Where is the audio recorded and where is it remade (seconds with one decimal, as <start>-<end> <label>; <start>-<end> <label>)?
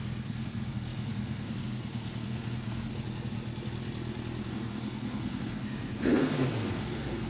0.0-2.9 remade; 2.9-4.5 recorded; 4.5-7.3 remade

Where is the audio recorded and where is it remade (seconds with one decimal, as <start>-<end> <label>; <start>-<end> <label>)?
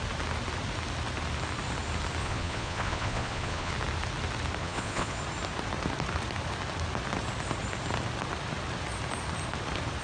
0.0-2.2 recorded; 2.2-3.7 remade; 3.7-4.6 recorded; 4.6-5.2 remade; 5.2-10.0 recorded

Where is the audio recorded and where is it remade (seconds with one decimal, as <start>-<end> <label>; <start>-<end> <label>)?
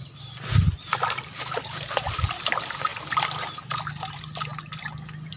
0.0-5.4 recorded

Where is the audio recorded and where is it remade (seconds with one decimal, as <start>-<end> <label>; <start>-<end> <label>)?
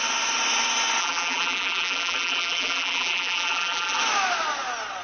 0.0-1.0 recorded; 1.0-4.0 remade; 4.0-5.0 recorded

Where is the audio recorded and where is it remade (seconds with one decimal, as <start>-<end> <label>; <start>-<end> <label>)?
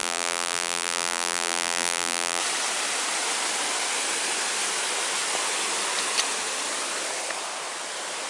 0.0-2.4 remade; 2.4-8.3 recorded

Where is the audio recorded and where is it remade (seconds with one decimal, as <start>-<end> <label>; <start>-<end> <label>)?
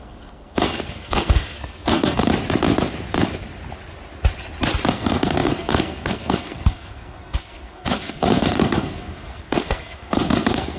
0.0-2.3 remade; 2.3-4.9 recorded; 4.9-10.8 remade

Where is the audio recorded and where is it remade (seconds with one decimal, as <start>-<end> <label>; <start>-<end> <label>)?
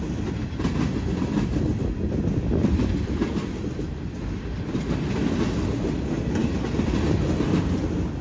0.0-8.2 recorded